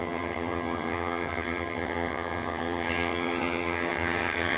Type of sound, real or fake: fake